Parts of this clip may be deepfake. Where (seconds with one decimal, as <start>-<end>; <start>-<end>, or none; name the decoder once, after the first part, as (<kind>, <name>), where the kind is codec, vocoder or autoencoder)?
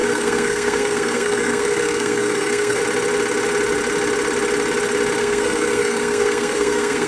0.0-2.8 (codec, SNAC); 5.2-7.1